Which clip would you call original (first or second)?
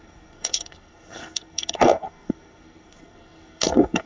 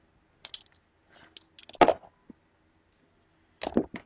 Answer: second